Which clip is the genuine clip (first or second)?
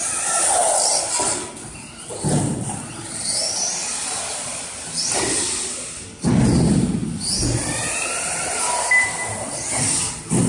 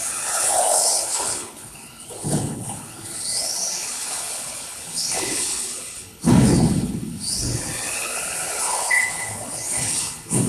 first